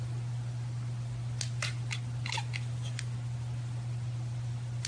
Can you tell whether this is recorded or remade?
recorded